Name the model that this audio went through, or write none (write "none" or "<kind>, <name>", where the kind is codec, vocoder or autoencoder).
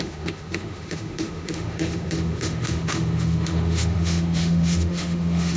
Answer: autoencoder, DAC-VAE